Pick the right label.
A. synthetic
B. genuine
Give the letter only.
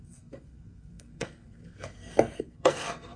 A